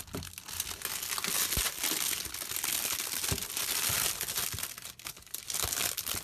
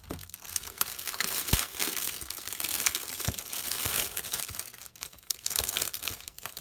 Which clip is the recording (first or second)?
first